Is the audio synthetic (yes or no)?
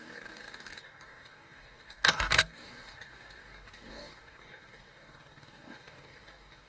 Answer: yes